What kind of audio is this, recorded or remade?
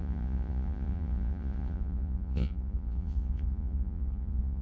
remade